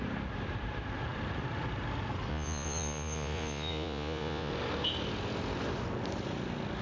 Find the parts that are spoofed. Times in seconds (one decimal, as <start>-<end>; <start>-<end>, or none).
2.3-4.5